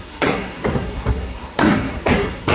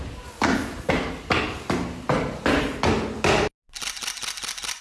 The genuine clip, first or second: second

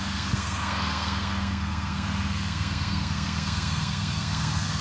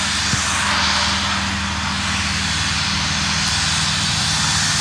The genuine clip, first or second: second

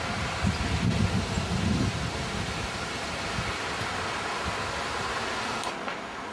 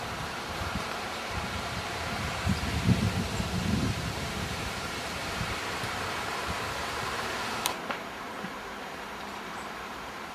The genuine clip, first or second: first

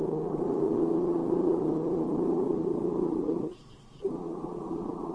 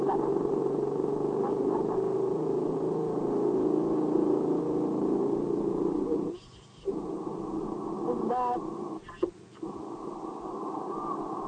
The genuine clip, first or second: second